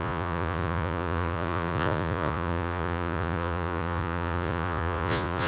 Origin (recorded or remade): remade